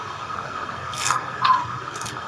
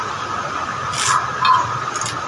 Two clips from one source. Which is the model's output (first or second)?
first